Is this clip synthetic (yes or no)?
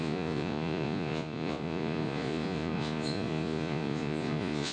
yes